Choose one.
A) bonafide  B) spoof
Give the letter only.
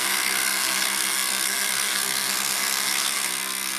B